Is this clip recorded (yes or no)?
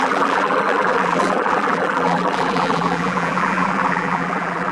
no